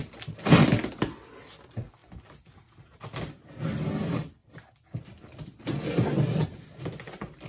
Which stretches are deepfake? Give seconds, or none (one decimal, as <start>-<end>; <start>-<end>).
2.0-3.9; 4.4-5.6